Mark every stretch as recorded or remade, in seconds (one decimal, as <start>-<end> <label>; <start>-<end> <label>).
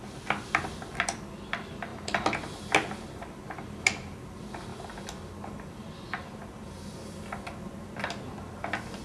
0.0-9.0 recorded